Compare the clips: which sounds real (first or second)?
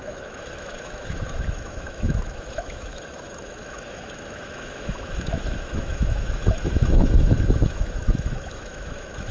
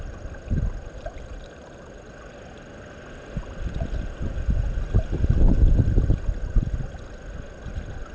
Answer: second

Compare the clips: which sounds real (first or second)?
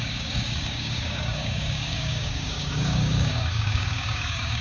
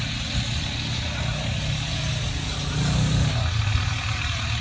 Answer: second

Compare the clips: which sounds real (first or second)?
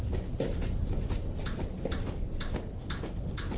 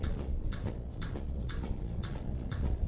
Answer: first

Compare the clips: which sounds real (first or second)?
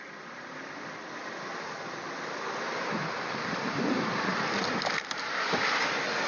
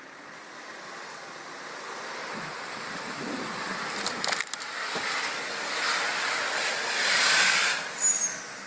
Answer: second